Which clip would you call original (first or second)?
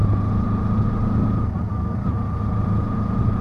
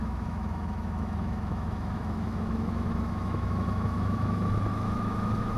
first